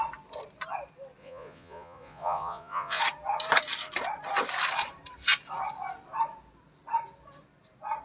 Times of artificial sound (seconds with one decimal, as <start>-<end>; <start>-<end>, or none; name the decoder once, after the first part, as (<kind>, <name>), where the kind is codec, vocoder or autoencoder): 1.2-3.0 (vocoder, Vocos)